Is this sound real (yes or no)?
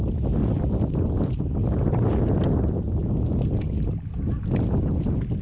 yes